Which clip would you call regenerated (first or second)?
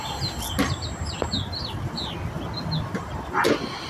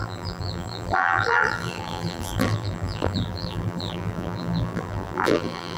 second